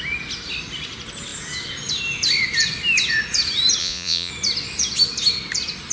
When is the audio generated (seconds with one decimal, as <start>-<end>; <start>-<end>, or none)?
3.8-4.3